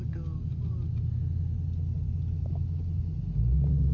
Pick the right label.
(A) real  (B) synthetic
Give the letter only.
A